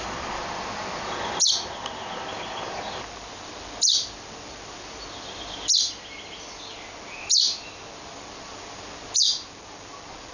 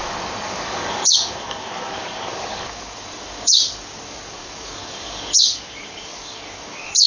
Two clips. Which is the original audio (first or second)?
first